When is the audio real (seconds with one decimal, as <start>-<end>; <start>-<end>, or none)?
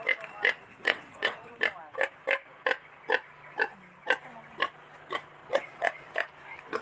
0.0-0.7; 1.5-5.4; 6.1-6.8